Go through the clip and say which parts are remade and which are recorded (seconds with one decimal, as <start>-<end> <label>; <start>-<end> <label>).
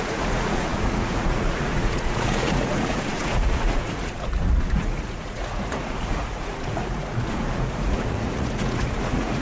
0.0-9.4 remade